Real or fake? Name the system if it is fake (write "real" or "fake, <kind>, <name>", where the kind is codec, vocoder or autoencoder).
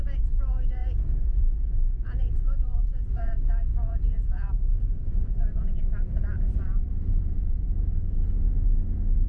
fake, vocoder, Vocos